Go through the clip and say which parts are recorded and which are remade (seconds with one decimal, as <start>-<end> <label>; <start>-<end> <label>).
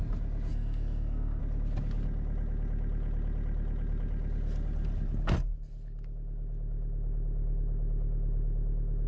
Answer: 0.0-0.5 recorded; 0.5-1.4 remade; 1.4-9.1 recorded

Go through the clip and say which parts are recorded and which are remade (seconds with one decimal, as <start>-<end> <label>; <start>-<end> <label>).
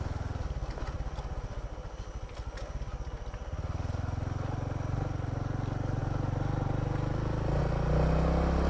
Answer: 0.0-8.7 recorded